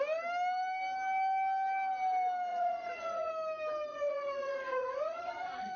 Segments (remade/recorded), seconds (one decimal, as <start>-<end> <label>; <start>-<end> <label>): 0.0-2.5 recorded; 2.5-3.3 remade; 3.3-3.9 recorded; 3.9-5.8 remade

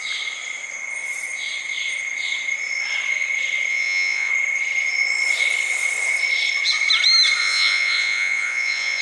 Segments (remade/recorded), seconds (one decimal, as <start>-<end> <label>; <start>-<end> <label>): 0.0-3.7 recorded; 3.7-4.3 remade; 4.3-7.4 recorded; 7.4-9.0 remade

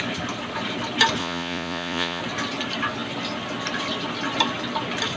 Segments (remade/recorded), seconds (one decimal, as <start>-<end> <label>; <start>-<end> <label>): 0.0-1.2 recorded; 1.2-2.2 remade; 2.2-5.2 recorded

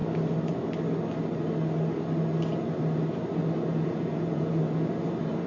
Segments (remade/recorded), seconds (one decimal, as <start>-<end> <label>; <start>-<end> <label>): 0.0-3.7 recorded; 3.7-4.6 remade; 4.6-5.5 recorded

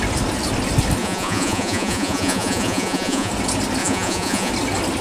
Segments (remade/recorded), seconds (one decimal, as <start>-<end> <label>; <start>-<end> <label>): 0.0-1.0 recorded; 1.0-3.3 remade; 3.3-3.8 recorded; 3.8-4.5 remade; 4.5-5.0 recorded

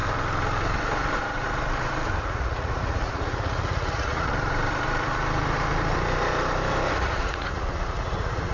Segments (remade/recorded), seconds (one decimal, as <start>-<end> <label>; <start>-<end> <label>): 0.0-2.2 recorded; 2.2-4.3 remade; 4.3-7.0 recorded; 7.0-8.5 remade

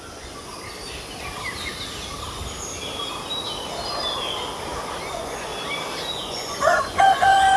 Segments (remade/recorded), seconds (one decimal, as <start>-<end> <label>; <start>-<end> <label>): 0.0-0.5 remade; 0.5-5.1 recorded; 5.1-5.5 remade; 5.5-6.1 recorded; 6.1-7.6 remade

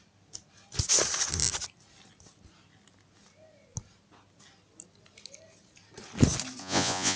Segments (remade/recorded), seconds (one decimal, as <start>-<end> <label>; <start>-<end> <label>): 0.0-6.6 recorded; 6.6-7.2 remade